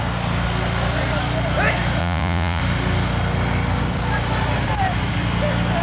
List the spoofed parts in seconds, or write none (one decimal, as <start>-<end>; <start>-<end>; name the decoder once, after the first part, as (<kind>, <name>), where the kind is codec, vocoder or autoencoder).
2.0-2.6 (vocoder, Vocos)